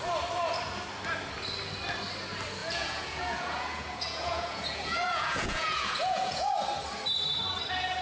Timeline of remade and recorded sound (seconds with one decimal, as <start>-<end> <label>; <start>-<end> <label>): 0.0-2.6 recorded; 2.6-6.5 remade; 6.5-8.0 recorded